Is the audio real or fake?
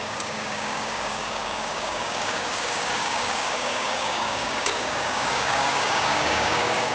fake